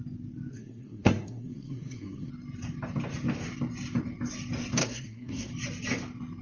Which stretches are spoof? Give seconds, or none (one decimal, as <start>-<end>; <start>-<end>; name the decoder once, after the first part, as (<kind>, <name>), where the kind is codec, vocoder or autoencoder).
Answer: 0.5-2.3 (codec, SNAC); 4.8-5.5